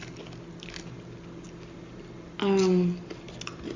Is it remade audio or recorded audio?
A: recorded